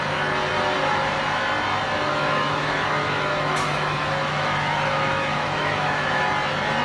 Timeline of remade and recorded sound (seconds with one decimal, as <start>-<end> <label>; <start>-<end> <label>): 0.0-2.1 recorded; 2.1-6.2 remade; 6.2-6.8 recorded